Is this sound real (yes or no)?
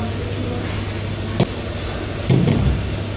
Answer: yes